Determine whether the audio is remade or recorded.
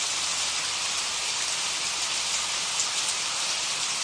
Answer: recorded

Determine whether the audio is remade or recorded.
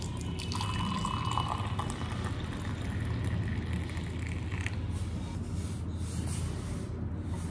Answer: recorded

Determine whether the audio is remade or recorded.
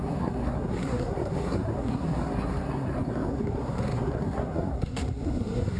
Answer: remade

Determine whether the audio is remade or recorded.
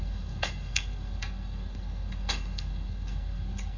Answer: remade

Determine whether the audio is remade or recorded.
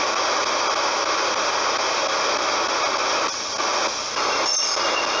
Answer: recorded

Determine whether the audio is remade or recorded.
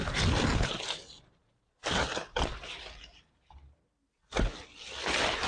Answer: recorded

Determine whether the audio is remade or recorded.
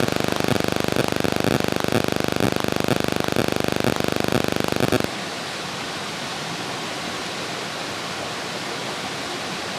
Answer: recorded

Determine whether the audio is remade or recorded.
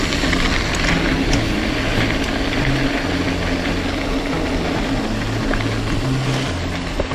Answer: recorded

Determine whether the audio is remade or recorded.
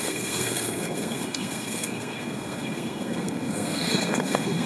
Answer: remade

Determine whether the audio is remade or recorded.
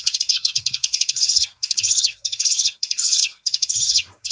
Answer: remade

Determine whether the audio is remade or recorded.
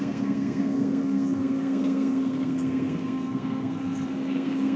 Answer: remade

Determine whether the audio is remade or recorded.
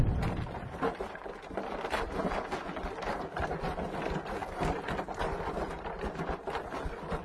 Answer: recorded